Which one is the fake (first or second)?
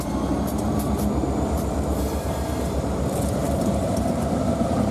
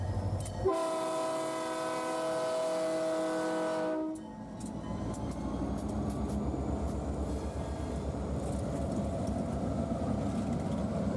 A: first